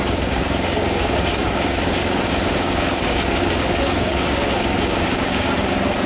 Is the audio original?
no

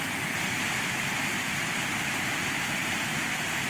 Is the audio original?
yes